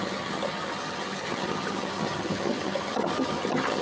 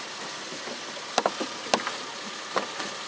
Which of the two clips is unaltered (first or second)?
second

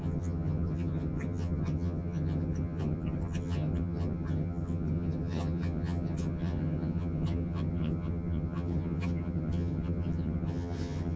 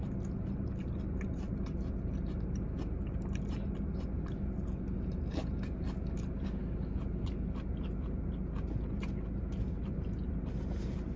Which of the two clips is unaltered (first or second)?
second